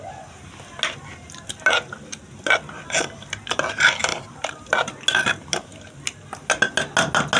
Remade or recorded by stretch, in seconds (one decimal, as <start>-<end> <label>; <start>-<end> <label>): 0.0-4.1 recorded; 4.1-4.7 remade; 4.7-7.4 recorded